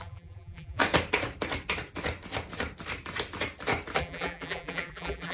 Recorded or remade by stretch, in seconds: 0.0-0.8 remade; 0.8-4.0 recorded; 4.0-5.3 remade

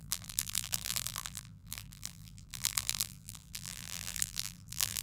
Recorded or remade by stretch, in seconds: 0.0-5.0 remade

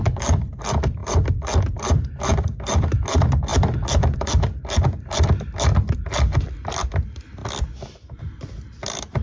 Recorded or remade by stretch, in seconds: 0.0-1.0 recorded; 1.0-1.6 remade; 1.6-2.3 recorded; 2.3-2.9 remade; 2.9-3.5 recorded; 3.5-6.5 remade; 6.5-9.2 recorded